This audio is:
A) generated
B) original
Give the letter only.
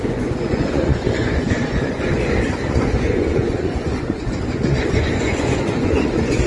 A